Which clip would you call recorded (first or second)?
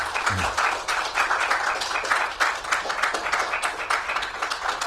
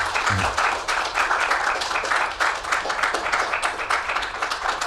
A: first